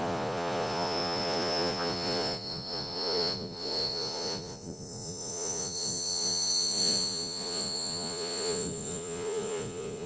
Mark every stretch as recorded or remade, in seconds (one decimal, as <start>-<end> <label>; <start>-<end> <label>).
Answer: 0.0-10.1 remade

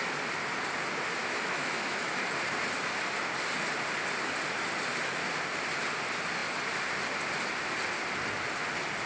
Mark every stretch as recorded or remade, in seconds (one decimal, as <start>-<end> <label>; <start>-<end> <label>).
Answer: 0.0-1.2 recorded; 1.2-2.2 remade; 2.2-9.1 recorded

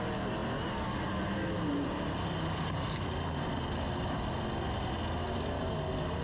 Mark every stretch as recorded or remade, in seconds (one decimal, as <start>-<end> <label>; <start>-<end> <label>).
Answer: 0.0-6.2 recorded

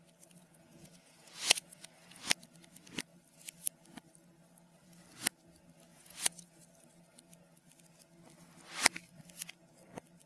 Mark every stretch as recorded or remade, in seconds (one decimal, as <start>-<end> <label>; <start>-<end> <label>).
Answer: 0.0-0.4 recorded; 0.4-2.2 remade; 2.2-5.9 recorded; 5.9-6.6 remade; 6.6-10.3 recorded

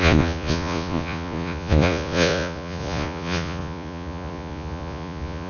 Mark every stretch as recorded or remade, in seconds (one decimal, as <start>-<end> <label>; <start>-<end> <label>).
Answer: 0.0-5.5 remade

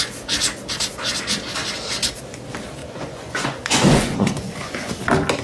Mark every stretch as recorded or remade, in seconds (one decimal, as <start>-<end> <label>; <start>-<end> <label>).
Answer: 0.0-2.8 recorded; 2.8-4.9 remade; 4.9-5.4 recorded

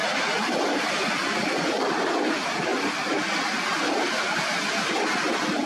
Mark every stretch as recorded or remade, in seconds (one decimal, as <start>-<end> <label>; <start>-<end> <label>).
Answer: 0.0-5.7 recorded

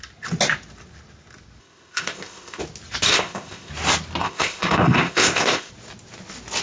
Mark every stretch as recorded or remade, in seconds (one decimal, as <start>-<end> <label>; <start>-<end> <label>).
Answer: 0.0-1.6 recorded; 1.6-2.6 remade; 2.6-3.1 recorded; 3.1-3.7 remade; 3.7-4.2 recorded; 4.2-5.7 remade; 5.7-6.6 recorded